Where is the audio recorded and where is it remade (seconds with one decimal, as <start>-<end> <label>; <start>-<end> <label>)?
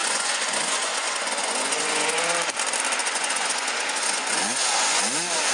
0.0-2.2 remade; 2.2-3.0 recorded; 3.0-5.0 remade; 5.0-5.5 recorded